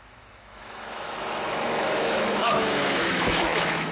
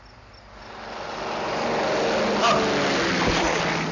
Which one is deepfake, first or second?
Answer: first